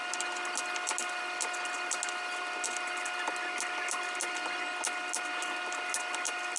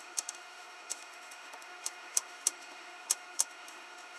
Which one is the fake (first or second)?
second